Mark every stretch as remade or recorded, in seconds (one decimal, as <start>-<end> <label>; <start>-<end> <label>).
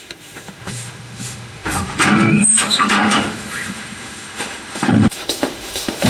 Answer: 0.0-6.1 remade